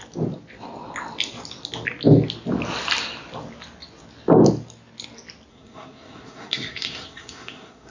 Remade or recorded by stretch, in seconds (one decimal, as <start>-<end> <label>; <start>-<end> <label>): 0.0-5.5 recorded; 5.5-7.9 remade